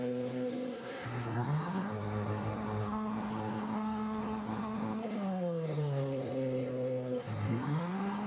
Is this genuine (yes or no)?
no